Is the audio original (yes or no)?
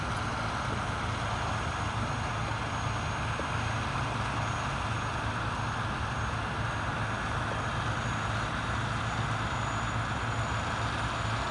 yes